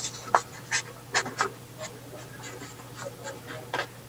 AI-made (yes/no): no